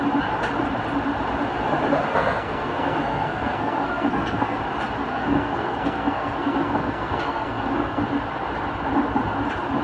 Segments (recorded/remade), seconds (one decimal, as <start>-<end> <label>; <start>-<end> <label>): 0.0-2.1 recorded; 2.1-4.6 remade; 4.6-5.1 recorded; 5.1-8.0 remade; 8.0-9.8 recorded